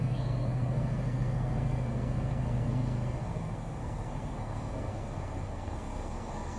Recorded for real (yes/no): no